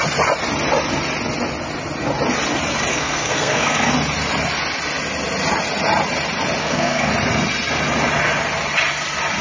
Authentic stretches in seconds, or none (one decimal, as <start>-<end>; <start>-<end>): 0.0-2.9; 3.9-6.6; 7.1-9.4